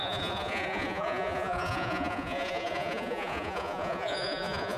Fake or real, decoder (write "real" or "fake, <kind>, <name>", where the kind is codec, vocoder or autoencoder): fake, vocoder, Vocos